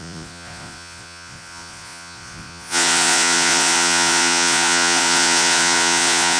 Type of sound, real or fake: fake